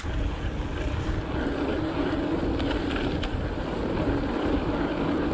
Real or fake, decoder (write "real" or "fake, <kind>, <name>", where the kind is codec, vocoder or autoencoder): real